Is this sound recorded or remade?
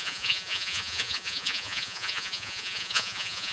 remade